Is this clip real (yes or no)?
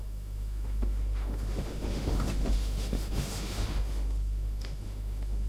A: no